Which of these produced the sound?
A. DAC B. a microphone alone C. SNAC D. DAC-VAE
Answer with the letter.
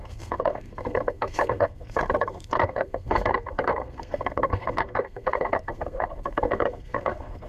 C